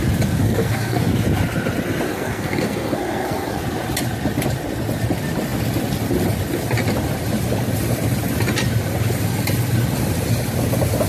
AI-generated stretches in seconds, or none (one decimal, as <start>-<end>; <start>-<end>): 0.4-1.1; 2.1-3.6